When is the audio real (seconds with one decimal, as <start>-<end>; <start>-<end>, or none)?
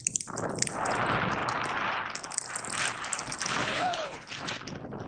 0.0-3.6; 4.3-5.1